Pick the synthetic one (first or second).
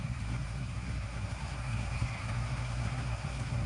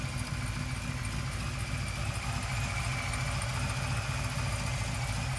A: first